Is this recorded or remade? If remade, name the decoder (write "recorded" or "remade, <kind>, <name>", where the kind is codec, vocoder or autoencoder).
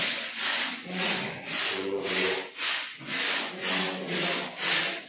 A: remade, vocoder, Vocos